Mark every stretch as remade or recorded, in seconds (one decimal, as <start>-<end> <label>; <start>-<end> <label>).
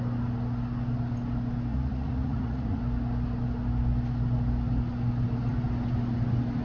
0.0-1.7 recorded; 1.7-2.8 remade; 2.8-6.6 recorded